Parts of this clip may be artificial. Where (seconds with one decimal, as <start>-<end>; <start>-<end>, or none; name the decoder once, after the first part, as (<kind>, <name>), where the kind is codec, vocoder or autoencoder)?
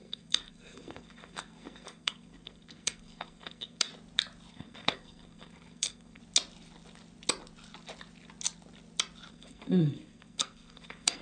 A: 0.0-3.9 (codec, SNAC); 4.5-6.2; 9.3-11.2